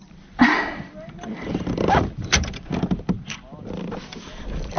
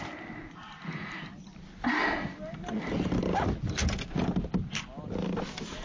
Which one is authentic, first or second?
second